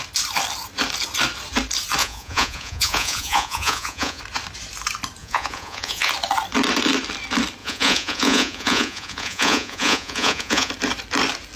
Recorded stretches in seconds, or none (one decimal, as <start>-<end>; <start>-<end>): 0.0-2.0; 4.2-5.2; 6.1-7.6; 10.7-11.6